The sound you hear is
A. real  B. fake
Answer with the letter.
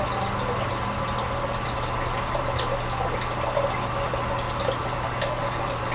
A